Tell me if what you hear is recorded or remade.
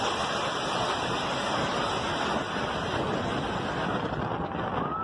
recorded